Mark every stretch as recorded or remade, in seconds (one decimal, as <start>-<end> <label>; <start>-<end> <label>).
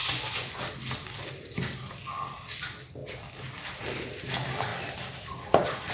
0.0-0.6 remade; 0.6-5.9 recorded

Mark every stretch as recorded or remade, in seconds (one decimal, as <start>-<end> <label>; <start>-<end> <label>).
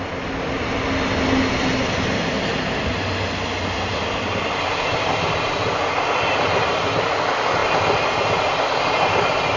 0.0-9.6 recorded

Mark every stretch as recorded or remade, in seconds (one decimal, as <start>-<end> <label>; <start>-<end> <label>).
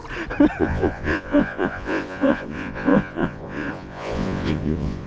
0.0-0.6 recorded; 0.6-5.1 remade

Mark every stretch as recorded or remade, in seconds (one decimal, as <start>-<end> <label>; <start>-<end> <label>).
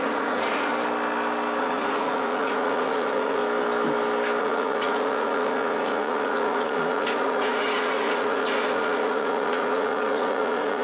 0.0-0.7 remade; 0.7-1.6 recorded; 1.6-3.4 remade; 3.4-4.4 recorded; 4.4-10.8 remade